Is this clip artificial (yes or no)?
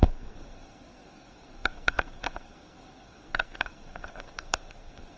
yes